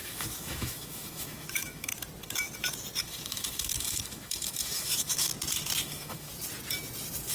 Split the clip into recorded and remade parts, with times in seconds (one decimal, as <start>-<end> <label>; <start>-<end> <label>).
0.0-1.9 remade; 1.9-3.0 recorded; 3.0-5.3 remade; 5.3-5.8 recorded; 5.8-6.3 remade; 6.3-7.3 recorded